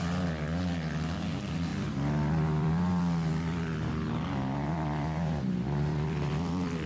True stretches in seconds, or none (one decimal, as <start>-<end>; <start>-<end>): 0.0-1.7; 3.9-5.9